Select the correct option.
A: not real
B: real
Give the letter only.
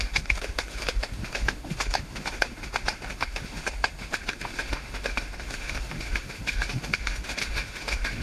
A